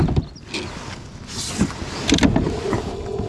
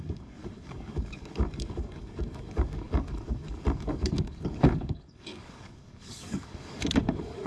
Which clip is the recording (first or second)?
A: first